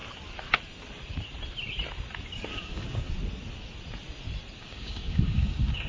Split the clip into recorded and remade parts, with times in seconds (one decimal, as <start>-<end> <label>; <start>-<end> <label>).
0.0-2.5 recorded; 2.5-3.1 remade; 3.1-4.6 recorded; 4.6-5.9 remade